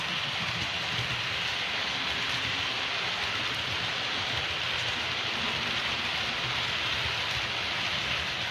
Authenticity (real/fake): real